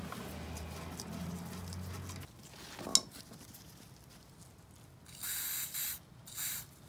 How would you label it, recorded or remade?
recorded